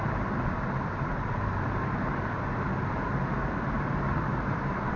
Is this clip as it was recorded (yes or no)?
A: no